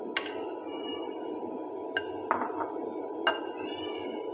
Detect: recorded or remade recorded